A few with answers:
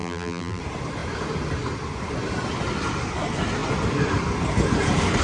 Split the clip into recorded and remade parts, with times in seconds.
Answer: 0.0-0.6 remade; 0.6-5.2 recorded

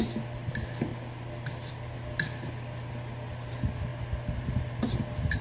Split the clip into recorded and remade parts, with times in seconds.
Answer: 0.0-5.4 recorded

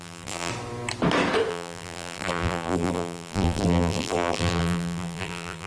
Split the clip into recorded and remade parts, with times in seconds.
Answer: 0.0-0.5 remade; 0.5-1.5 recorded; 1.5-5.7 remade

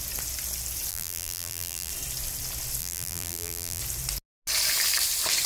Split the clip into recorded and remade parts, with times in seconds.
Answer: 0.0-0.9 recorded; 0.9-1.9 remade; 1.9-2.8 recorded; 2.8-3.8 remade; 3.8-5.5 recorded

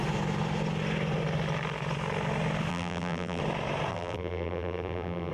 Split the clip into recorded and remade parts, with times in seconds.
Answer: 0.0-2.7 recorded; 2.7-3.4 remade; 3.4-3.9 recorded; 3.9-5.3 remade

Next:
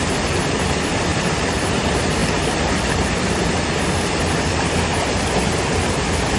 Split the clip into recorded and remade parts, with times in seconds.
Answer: 0.0-1.1 recorded; 1.1-1.7 remade; 1.7-6.4 recorded